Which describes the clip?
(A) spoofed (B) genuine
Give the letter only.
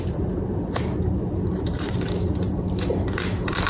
A